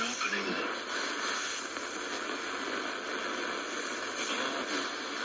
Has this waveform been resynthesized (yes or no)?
no